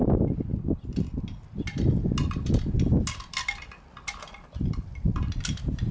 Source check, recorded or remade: recorded